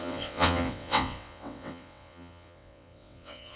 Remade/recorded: remade